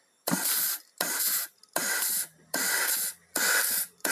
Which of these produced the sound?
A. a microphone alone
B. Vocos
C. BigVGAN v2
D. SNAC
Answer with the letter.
C